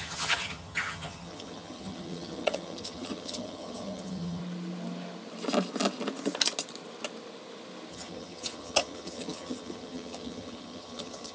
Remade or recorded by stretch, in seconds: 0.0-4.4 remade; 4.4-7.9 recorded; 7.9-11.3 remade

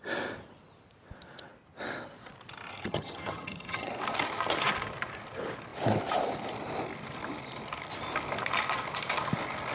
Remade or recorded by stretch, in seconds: 0.0-2.7 recorded; 2.7-3.9 remade; 3.9-9.7 recorded

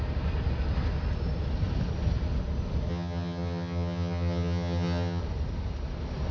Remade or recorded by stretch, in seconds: 0.0-2.9 recorded; 2.9-5.2 remade; 5.2-6.3 recorded

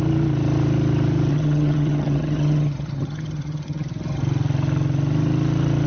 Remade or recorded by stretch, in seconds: 0.0-1.3 recorded; 1.3-4.2 remade; 4.2-5.9 recorded